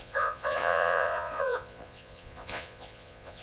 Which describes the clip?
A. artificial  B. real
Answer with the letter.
A